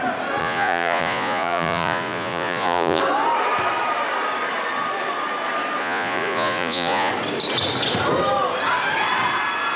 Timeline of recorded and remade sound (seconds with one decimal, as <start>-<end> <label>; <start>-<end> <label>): 0.0-0.4 recorded; 0.4-3.0 remade; 3.0-5.8 recorded; 5.8-7.1 remade; 7.1-9.8 recorded